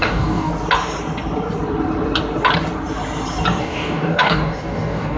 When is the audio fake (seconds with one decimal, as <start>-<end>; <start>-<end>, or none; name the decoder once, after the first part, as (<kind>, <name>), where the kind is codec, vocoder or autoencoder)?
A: 0.0-0.5 (codec, DAC); 3.6-5.2